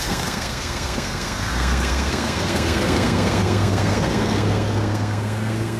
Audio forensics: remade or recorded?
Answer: remade